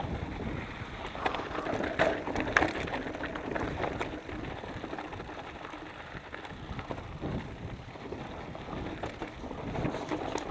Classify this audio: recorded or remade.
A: recorded